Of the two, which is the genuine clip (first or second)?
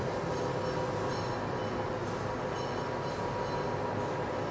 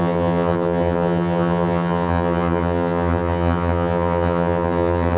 first